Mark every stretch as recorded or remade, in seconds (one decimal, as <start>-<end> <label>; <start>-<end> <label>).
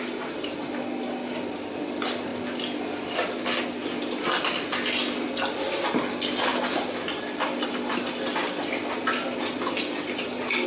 0.0-10.7 recorded